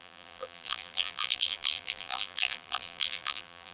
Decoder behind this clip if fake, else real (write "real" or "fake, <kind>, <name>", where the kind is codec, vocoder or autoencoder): fake, vocoder, BigVGAN v2